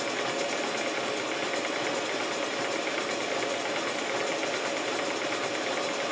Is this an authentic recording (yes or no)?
yes